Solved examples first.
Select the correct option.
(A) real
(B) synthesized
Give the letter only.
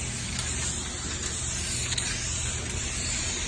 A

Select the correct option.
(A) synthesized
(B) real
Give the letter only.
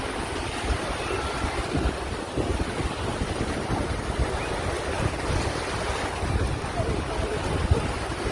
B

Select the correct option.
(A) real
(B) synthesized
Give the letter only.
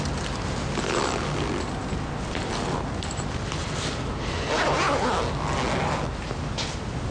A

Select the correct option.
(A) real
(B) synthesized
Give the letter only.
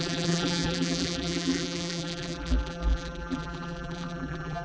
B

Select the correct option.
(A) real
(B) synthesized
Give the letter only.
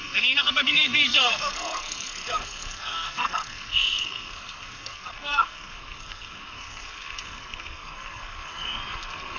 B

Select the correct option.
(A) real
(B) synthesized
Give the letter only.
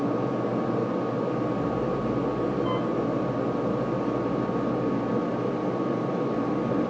A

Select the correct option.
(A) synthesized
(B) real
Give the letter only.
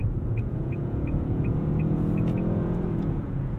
A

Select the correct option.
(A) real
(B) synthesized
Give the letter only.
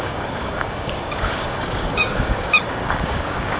B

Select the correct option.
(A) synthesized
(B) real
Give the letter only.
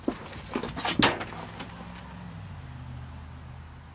B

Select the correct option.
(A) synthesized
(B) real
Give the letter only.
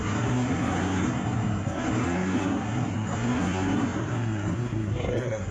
A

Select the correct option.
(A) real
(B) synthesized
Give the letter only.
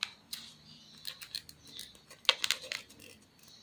A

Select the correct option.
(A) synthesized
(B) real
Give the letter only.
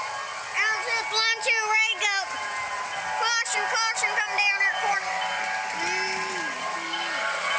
B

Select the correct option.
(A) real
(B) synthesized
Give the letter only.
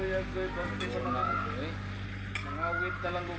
A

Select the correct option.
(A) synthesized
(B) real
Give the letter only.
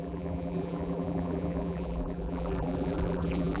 A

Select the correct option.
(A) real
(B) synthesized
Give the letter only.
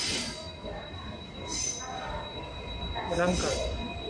A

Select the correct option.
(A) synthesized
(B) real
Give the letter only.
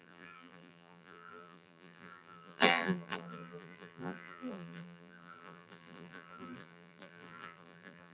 A